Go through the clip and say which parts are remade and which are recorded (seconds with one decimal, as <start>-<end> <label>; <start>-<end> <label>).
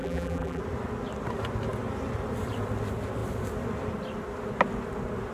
0.0-0.6 remade; 0.6-5.3 recorded